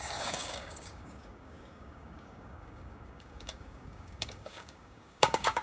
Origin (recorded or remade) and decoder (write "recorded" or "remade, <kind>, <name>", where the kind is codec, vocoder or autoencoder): remade, codec, DAC